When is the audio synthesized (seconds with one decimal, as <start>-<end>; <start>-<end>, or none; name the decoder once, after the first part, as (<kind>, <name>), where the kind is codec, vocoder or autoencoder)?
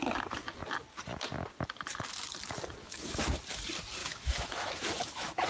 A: 2.8-3.4 (autoencoder, DAC-VAE); 4.0-5.5